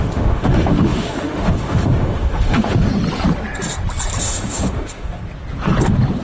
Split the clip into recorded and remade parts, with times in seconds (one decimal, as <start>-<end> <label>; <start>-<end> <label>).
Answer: 0.0-2.9 remade; 2.9-4.2 recorded; 4.2-5.2 remade; 5.2-6.2 recorded